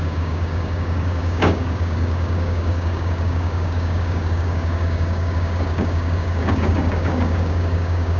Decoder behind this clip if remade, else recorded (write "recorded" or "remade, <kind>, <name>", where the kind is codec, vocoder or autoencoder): remade, codec, DAC